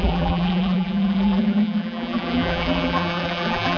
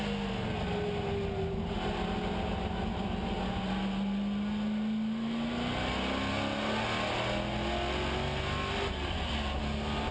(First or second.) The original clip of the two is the second